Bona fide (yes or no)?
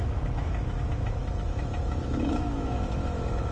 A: no